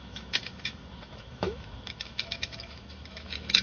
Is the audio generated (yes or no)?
yes